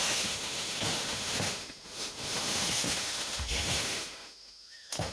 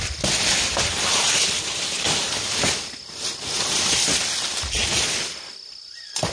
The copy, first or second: first